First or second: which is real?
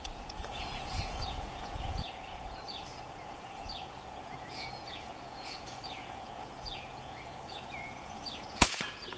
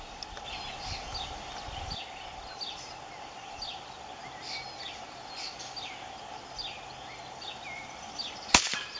second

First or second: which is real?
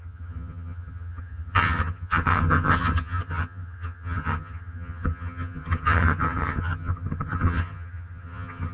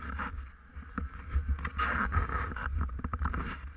second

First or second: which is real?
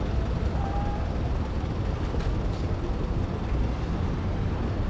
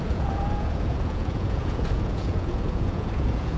first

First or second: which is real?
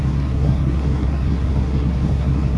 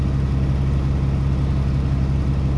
second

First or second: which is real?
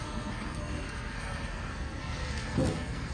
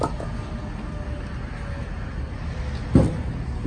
second